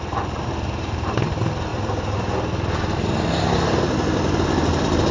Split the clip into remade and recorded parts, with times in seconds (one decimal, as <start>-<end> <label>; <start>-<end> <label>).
0.0-1.7 remade; 1.7-5.1 recorded